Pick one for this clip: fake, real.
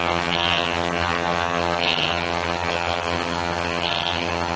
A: fake